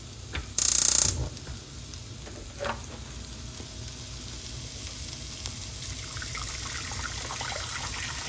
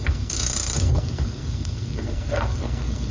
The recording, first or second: first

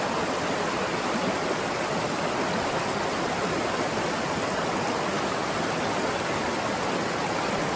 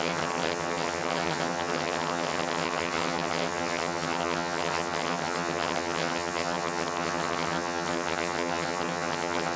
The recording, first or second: first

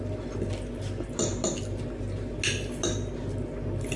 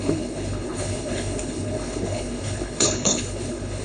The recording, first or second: first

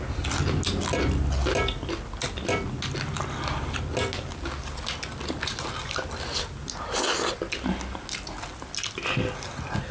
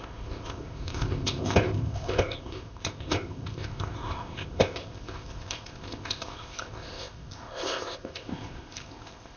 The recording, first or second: first